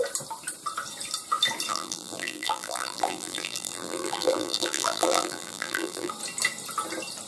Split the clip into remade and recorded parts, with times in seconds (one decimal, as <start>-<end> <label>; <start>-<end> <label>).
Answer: 0.0-1.7 recorded; 1.7-6.1 remade; 6.1-7.3 recorded